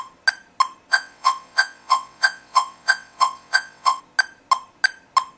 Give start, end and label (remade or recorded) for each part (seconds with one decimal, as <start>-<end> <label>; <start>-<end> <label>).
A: 0.0-0.9 recorded; 0.9-4.0 remade; 4.0-5.4 recorded